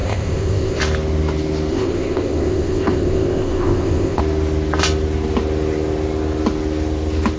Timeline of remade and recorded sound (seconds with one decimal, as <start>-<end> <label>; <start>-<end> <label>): 0.0-0.8 remade; 0.8-1.7 recorded; 1.7-4.2 remade; 4.2-7.4 recorded